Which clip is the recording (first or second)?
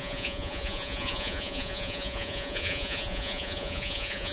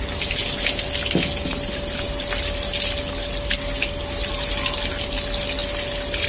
second